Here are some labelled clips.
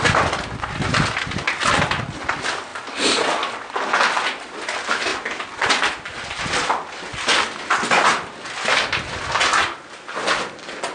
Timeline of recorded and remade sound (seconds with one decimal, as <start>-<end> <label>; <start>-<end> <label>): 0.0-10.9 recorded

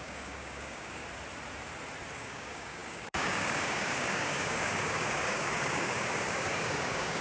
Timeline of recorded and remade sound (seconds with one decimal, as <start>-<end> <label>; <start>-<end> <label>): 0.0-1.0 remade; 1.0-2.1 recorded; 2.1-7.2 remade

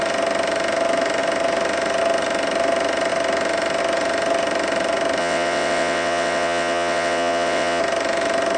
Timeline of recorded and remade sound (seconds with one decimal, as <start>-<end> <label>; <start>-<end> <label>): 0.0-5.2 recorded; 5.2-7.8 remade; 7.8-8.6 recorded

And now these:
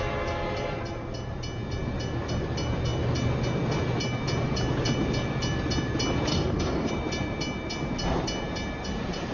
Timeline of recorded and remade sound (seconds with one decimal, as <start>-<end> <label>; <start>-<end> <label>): 0.0-6.3 recorded; 6.3-6.9 remade; 6.9-9.3 recorded

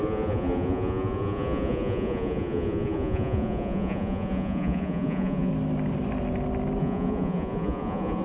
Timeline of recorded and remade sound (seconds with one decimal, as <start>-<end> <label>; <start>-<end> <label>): 0.0-5.5 remade; 5.5-6.8 recorded; 6.8-8.2 remade